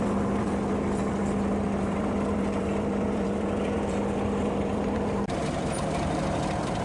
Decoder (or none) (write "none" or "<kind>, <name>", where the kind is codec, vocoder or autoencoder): vocoder, BigVGAN v2